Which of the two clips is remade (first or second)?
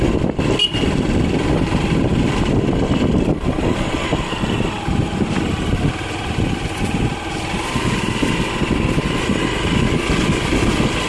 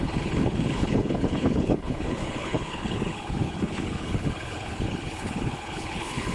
second